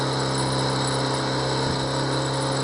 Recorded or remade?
recorded